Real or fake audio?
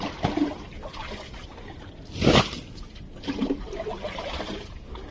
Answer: real